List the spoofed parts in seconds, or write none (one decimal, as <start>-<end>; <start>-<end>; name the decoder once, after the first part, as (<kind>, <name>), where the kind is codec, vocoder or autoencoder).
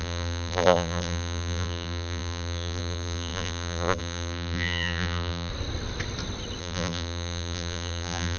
0.0-5.5 (vocoder, BigVGAN v2); 6.6-8.4